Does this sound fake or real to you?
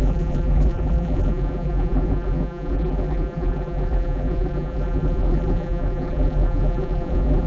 fake